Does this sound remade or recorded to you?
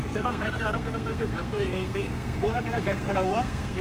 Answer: remade